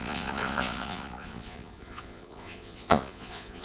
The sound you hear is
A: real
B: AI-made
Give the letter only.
B